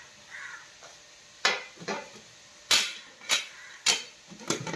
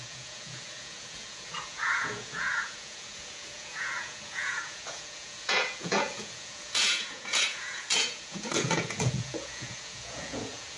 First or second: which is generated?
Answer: second